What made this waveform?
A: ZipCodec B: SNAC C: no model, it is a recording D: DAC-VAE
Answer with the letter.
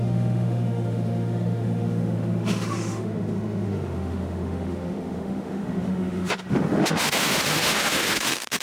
D